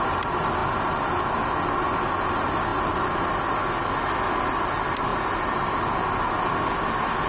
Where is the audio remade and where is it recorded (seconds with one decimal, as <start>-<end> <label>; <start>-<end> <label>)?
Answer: 0.0-7.3 recorded